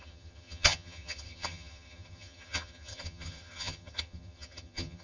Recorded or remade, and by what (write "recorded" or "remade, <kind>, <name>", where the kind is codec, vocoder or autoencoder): remade, vocoder, HiFi-GAN